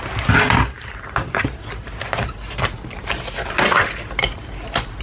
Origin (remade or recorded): recorded